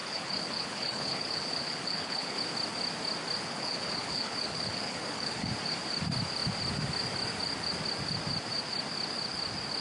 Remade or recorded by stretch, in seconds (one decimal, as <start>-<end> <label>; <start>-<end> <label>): 0.0-2.4 remade; 2.4-3.4 recorded; 3.4-5.5 remade; 5.5-9.8 recorded